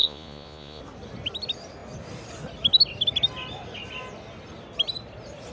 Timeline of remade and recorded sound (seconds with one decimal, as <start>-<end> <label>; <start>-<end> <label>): 0.0-0.8 remade; 0.8-5.5 recorded